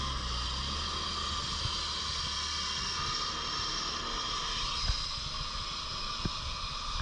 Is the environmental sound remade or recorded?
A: recorded